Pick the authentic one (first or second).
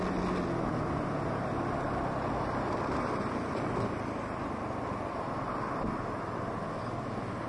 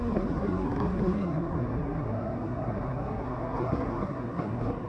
first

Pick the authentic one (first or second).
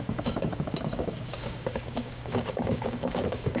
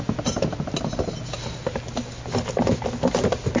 second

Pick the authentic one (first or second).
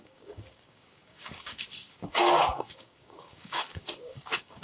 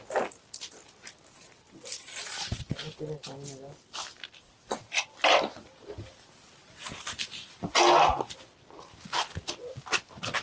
second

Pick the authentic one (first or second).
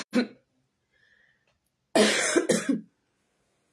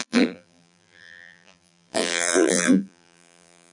first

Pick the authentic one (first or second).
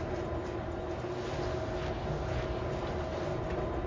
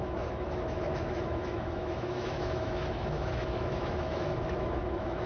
first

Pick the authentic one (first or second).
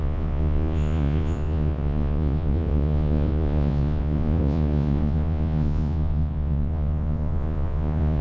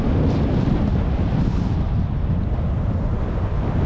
second